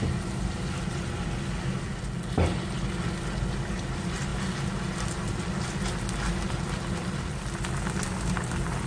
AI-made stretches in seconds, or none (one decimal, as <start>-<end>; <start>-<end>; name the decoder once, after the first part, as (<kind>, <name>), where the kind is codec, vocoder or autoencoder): none